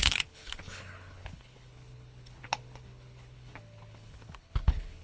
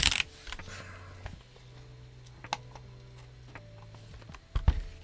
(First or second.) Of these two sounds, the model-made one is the first